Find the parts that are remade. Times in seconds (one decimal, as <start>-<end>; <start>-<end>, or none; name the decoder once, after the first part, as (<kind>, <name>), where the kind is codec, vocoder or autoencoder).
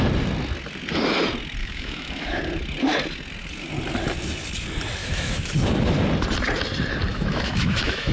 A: 1.6-2.4 (autoencoder, DAC-VAE); 5.0-5.5; 7.1-8.1